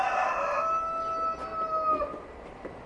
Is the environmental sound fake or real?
real